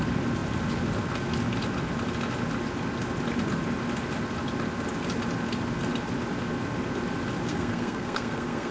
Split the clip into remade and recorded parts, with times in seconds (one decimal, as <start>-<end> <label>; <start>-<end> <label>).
0.0-7.5 recorded; 7.5-8.7 remade